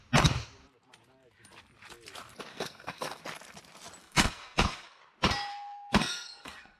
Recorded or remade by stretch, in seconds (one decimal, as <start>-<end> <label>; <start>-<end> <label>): 0.0-2.5 recorded; 2.5-3.2 remade; 3.2-4.0 recorded; 4.0-5.0 remade; 5.0-5.5 recorded; 5.5-6.8 remade